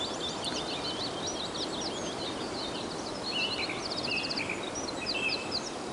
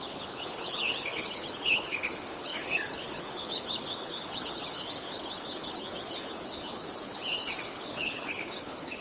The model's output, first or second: second